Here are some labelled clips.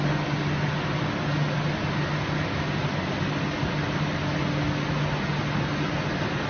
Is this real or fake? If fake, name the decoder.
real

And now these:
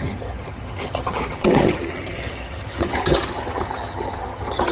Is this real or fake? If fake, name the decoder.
fake, vocoder, HiFi-GAN